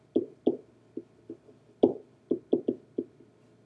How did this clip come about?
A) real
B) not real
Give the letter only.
A